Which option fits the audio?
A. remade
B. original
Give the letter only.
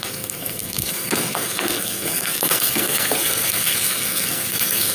A